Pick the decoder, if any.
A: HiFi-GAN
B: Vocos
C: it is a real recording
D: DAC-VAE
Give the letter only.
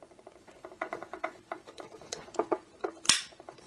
B